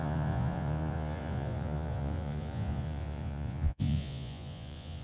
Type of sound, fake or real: fake